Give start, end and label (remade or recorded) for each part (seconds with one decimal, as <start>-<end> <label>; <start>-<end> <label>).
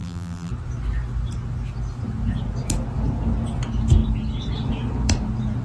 0.0-0.5 remade; 0.5-5.6 recorded